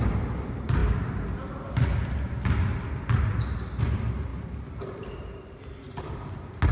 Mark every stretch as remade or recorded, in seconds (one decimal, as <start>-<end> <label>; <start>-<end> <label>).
0.0-6.7 recorded